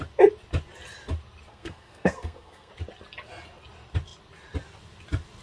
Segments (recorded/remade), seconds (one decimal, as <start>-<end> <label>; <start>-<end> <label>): 0.0-1.5 recorded; 1.5-2.7 remade; 2.7-5.4 recorded